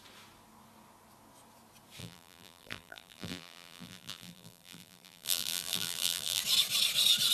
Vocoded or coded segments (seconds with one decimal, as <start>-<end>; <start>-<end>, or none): 2.0-6.4